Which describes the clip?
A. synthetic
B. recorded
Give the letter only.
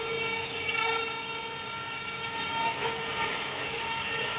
A